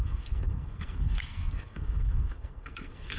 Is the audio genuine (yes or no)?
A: no